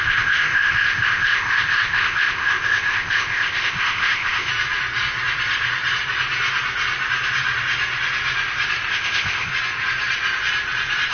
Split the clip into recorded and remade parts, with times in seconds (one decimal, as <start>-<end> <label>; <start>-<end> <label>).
0.0-4.5 remade; 4.5-8.9 recorded; 8.9-9.5 remade; 9.5-11.1 recorded